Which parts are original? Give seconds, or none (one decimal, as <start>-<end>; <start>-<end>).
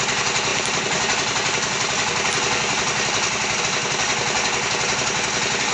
0.0-0.5; 3.6-5.7